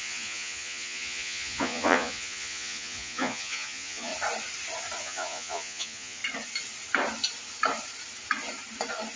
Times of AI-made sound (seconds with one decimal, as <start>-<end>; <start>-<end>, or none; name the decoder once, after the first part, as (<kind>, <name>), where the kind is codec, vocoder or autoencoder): 0.0-4.1 (vocoder, Vocos); 5.0-6.2